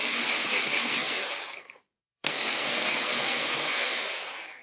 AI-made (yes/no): yes